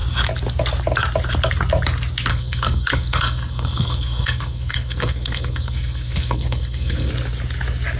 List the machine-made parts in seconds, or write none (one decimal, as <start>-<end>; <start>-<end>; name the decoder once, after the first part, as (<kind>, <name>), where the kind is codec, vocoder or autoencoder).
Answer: 2.3-7.1 (codec, SNAC)